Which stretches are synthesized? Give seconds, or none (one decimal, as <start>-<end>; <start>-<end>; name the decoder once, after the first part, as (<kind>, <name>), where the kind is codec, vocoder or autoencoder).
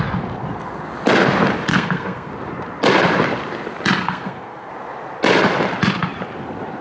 1.7-2.3 (codec, SNAC); 4.0-4.7